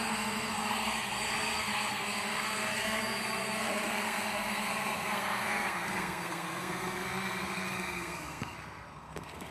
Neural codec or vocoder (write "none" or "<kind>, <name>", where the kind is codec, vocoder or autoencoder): codec, SNAC